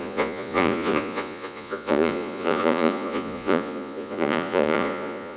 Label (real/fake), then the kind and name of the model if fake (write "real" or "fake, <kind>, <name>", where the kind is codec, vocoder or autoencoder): fake, vocoder, Vocos